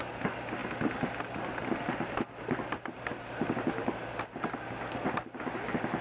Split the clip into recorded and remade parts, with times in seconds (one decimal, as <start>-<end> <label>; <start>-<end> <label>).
0.0-6.0 recorded